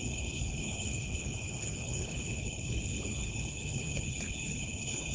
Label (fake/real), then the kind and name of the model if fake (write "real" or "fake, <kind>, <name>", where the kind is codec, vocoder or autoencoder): fake, codec, HILCodec